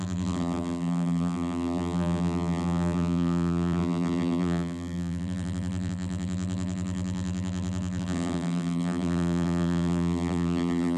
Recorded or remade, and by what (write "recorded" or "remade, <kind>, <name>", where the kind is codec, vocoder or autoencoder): remade, vocoder, BigVGAN v2